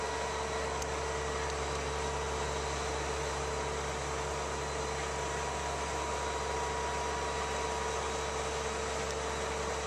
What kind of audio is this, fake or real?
real